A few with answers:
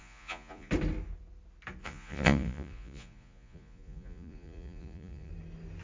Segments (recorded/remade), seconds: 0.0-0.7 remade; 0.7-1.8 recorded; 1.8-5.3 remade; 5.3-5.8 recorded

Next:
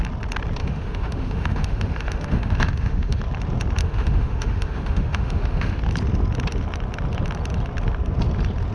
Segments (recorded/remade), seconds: 0.0-0.6 recorded; 0.6-3.2 remade; 3.2-3.8 recorded; 3.8-5.8 remade; 5.8-8.7 recorded

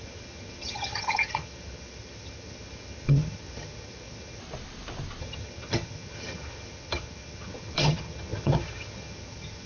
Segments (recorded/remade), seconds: 0.0-4.4 remade; 4.4-5.2 recorded; 5.2-9.7 remade

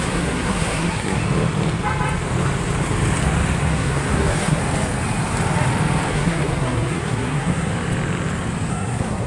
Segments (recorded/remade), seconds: 0.0-1.2 remade; 1.2-3.6 recorded; 3.6-4.6 remade; 4.6-6.1 recorded; 6.1-7.7 remade; 7.7-8.7 recorded; 8.7-9.3 remade

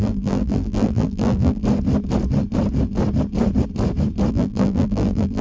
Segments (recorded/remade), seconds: 0.0-1.6 remade; 1.6-4.3 recorded; 4.3-5.4 remade

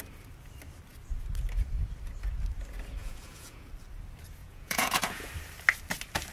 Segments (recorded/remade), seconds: 0.0-3.0 recorded; 3.0-3.7 remade; 3.7-4.4 recorded; 4.4-5.3 remade; 5.3-6.3 recorded

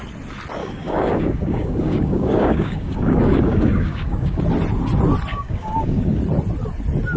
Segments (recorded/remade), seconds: 0.0-0.6 recorded; 0.6-4.4 remade; 4.4-5.3 recorded; 5.3-6.2 remade; 6.2-7.2 recorded

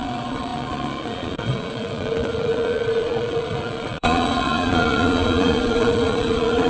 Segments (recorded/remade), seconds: 0.0-6.7 remade